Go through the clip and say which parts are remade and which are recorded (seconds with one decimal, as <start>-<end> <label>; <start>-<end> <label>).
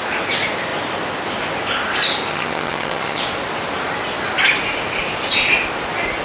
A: 0.0-2.3 recorded; 2.3-3.2 remade; 3.2-6.2 recorded